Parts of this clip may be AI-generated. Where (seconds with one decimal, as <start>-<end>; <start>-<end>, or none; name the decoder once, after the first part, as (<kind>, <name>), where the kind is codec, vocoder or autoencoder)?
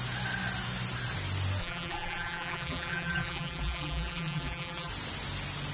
1.6-4.9 (vocoder, BigVGAN v2)